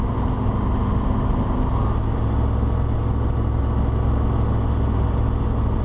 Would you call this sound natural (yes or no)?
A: yes